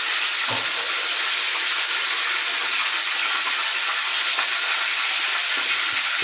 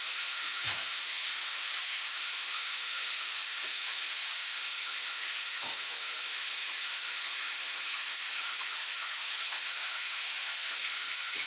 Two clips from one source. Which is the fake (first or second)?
second